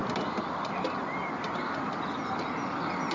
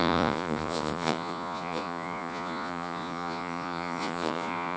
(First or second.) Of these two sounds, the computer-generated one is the second